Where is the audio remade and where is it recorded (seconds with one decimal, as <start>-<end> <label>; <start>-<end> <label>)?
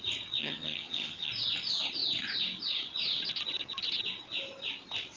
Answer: 0.0-0.4 recorded; 0.4-1.3 remade; 1.3-5.2 recorded